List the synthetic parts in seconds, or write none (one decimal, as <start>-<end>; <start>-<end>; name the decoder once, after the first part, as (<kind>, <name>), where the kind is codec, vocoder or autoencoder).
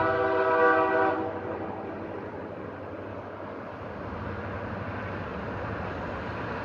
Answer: 3.1-3.7 (codec, DAC)